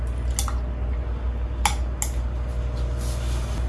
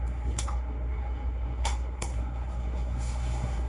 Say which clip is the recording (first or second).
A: first